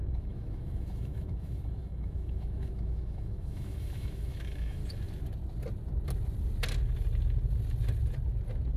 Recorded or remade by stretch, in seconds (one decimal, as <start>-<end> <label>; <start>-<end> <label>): 0.0-4.8 remade; 4.8-8.8 recorded

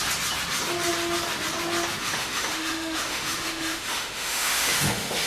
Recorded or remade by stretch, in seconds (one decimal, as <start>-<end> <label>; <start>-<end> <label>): 0.0-2.0 recorded; 2.0-5.3 remade

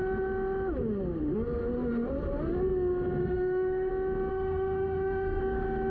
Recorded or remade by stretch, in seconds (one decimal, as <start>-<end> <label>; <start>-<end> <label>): 0.0-3.2 recorded; 3.2-3.9 remade; 3.9-4.3 recorded; 4.3-5.4 remade; 5.4-5.9 recorded

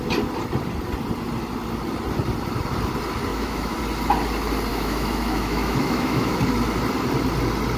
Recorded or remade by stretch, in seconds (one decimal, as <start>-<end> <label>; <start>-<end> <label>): 0.0-3.3 recorded; 3.3-3.8 remade; 3.8-4.7 recorded; 4.7-6.4 remade; 6.4-7.8 recorded

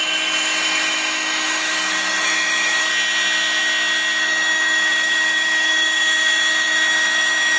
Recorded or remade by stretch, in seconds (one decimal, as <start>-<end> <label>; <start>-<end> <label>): 0.0-2.9 remade; 2.9-4.2 recorded; 4.2-7.6 remade

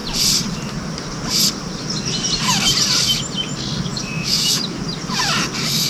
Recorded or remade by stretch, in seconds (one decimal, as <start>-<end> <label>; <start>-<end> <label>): 0.0-3.9 recorded; 3.9-4.6 remade; 4.6-5.9 recorded